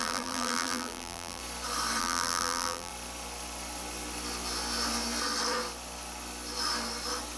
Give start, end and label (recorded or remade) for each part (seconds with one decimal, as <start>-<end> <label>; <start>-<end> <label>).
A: 0.0-1.4 remade; 1.4-2.0 recorded; 2.0-2.9 remade; 2.9-7.4 recorded